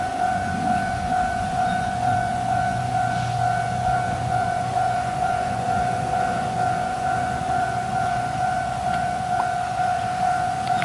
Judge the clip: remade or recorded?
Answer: remade